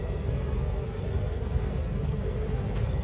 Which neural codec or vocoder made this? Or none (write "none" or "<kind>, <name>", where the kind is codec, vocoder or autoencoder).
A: codec, SNAC